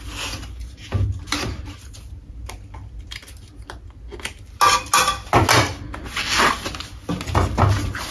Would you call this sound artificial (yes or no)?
no